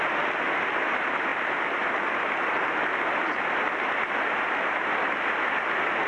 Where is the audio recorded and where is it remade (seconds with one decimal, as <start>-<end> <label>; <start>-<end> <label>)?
0.0-6.1 recorded